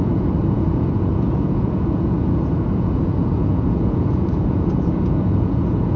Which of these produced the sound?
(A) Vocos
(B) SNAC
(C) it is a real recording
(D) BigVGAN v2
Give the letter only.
A